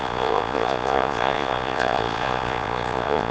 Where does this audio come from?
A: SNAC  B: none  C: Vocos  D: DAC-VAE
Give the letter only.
C